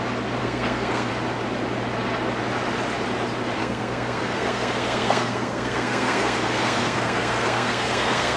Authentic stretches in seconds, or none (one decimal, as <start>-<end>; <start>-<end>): 0.0-0.4; 1.1-3.6